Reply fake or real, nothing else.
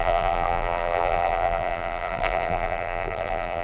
fake